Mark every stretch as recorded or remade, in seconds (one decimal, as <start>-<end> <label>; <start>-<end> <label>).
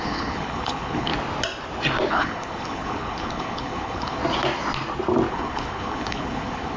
0.0-1.1 remade; 1.1-2.1 recorded; 2.1-4.2 remade; 4.2-5.3 recorded; 5.3-6.8 remade